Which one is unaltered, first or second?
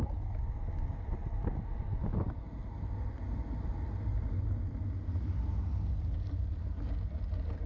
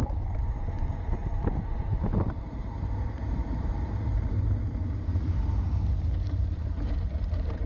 first